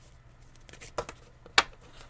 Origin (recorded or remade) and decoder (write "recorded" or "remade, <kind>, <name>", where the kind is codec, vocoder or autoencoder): recorded